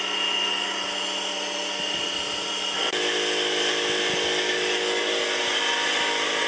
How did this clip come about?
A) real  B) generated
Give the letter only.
A